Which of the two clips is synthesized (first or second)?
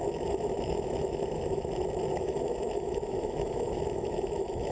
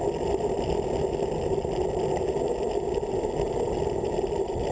first